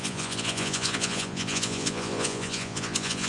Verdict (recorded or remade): remade